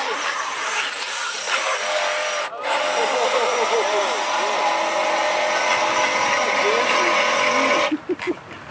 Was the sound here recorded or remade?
recorded